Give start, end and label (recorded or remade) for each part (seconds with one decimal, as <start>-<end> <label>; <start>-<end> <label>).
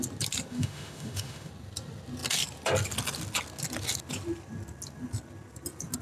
0.0-0.5 recorded; 0.5-1.5 remade; 1.5-6.0 recorded